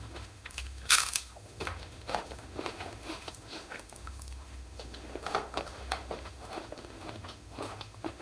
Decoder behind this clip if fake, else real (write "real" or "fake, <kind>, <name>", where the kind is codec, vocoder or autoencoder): fake, autoencoder, DAC-VAE